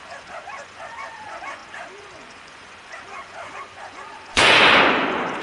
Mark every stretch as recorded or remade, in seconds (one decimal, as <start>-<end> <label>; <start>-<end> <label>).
0.0-5.4 remade